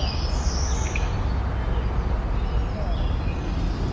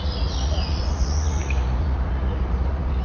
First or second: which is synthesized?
second